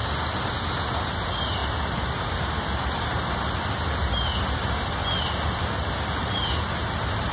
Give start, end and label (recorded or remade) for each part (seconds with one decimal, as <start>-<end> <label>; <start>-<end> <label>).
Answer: 0.0-0.5 remade; 0.5-7.3 recorded